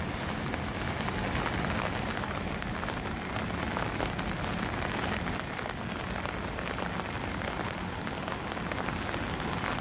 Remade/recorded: recorded